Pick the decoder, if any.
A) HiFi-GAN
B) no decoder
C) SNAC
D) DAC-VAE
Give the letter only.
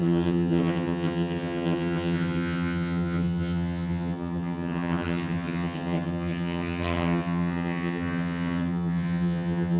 A